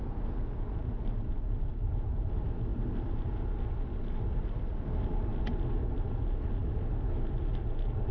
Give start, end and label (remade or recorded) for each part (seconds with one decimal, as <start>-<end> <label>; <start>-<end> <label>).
0.0-0.8 recorded; 0.8-1.7 remade; 1.7-8.1 recorded